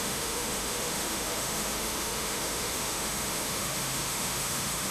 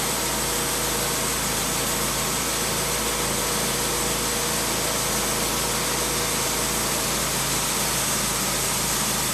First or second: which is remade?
first